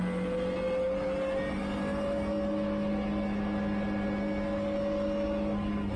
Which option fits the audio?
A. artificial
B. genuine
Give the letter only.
B